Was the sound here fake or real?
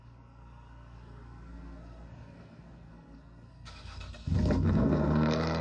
fake